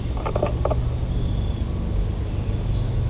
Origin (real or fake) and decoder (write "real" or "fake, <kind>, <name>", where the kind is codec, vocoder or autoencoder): real